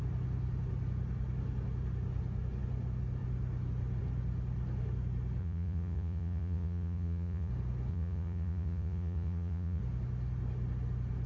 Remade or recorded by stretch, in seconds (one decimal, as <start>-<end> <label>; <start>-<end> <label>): 0.0-5.4 recorded; 5.4-7.5 remade; 7.5-7.9 recorded; 7.9-9.8 remade; 9.8-11.3 recorded